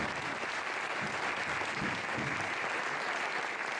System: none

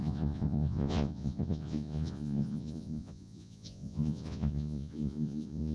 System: vocoder, Vocos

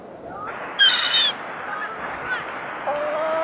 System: none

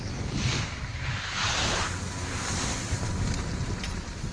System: none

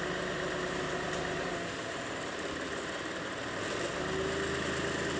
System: none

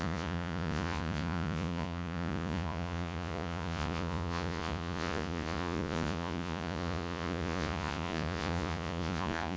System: vocoder, Vocos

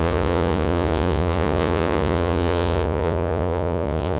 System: vocoder, Vocos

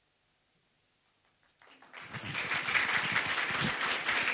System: none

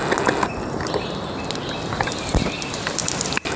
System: none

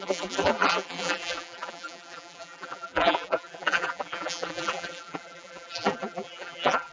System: vocoder, BigVGAN v2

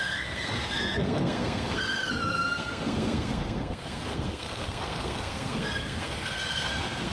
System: codec, SNAC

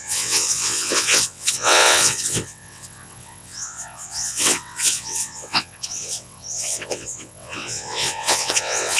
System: vocoder, WaveNeXt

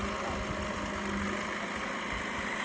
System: none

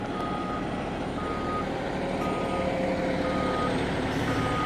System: none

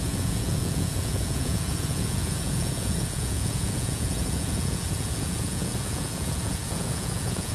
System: vocoder, Vocos